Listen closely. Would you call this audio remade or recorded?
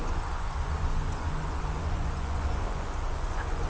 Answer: remade